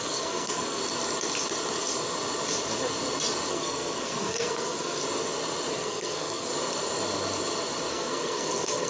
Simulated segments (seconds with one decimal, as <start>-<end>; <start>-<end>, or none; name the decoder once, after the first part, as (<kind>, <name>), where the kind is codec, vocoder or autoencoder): 0.0-0.8 (codec, SNAC); 3.5-5.0; 5.7-6.5; 7.9-8.9